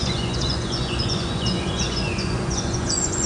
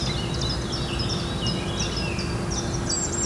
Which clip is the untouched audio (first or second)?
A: second